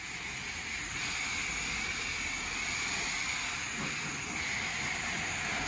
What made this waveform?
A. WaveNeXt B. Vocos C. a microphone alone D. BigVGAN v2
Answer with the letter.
C